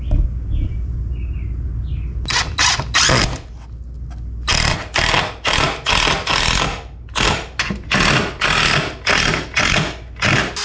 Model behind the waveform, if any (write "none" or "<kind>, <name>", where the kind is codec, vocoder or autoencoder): none